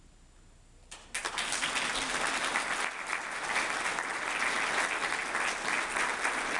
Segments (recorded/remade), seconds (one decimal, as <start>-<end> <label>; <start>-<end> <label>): 0.0-6.6 recorded